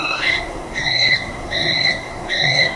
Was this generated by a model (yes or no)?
yes